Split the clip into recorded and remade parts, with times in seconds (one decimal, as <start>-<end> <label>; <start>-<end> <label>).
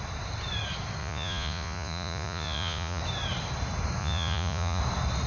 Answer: 0.0-1.0 recorded; 1.0-3.0 remade; 3.0-4.0 recorded; 4.0-4.8 remade; 4.8-5.3 recorded